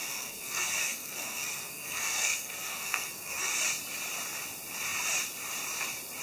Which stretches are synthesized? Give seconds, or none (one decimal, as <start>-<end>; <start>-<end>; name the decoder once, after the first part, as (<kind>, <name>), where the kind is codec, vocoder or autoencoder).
0.0-3.5 (codec, SNAC)